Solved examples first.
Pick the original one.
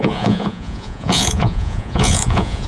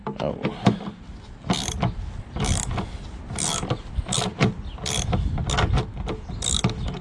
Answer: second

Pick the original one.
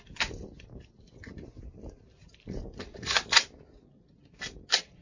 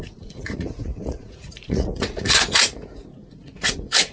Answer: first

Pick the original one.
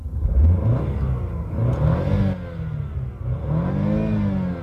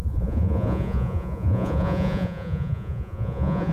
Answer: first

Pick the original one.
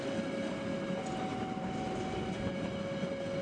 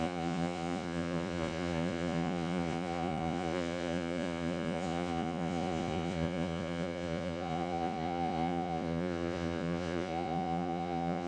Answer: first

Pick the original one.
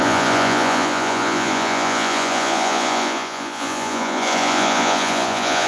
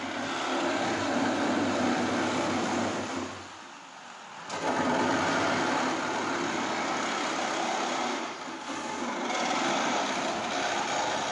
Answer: second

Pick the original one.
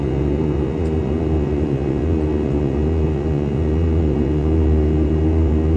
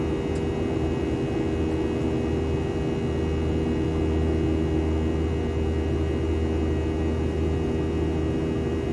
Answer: second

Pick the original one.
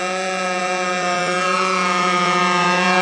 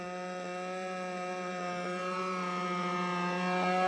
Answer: second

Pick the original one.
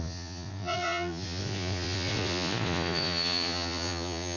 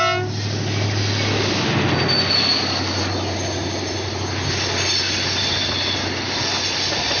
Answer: second